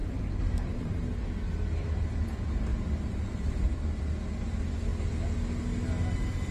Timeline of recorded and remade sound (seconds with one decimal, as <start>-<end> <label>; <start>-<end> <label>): 0.0-1.0 remade; 1.0-2.7 recorded; 2.7-4.0 remade; 4.0-6.5 recorded